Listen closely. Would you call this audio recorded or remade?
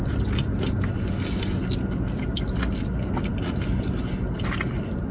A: recorded